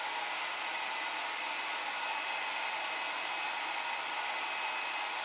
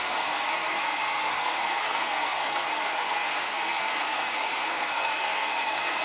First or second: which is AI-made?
second